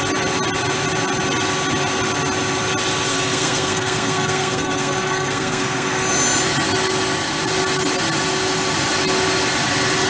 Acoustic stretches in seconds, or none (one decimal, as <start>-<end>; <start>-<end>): 0.0-3.1; 6.1-10.1